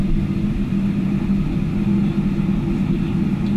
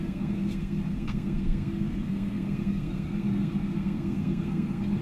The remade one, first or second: second